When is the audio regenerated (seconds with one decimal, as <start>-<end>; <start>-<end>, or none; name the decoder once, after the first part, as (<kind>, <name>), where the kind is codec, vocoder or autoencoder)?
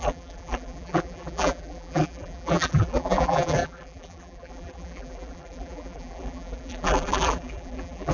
0.0-8.1 (vocoder, BigVGAN v2)